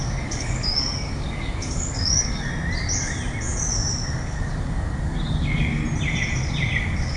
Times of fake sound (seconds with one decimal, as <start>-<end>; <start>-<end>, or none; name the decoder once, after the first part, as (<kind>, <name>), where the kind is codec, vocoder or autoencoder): 0.0-2.5 (codec, DAC); 4.1-5.8; 6.8-7.2